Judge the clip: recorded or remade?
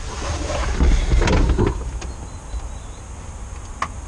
recorded